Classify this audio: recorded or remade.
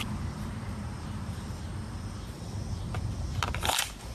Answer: recorded